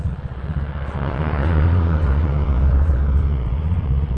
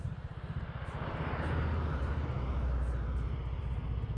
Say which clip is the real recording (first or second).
second